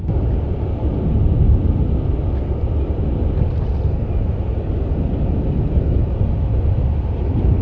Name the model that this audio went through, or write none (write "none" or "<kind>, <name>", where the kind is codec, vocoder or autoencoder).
none